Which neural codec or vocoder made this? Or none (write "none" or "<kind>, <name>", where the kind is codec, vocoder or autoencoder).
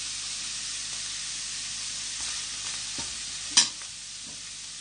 none